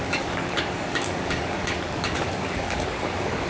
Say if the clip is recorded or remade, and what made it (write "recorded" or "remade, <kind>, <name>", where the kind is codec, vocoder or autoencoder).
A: remade, codec, DAC